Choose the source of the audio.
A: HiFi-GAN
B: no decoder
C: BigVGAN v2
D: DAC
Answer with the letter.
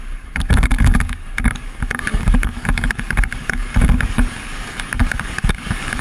D